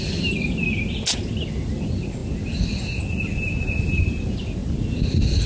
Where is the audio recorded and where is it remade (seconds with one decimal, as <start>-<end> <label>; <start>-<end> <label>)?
0.0-5.5 recorded